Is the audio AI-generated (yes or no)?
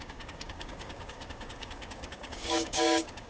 yes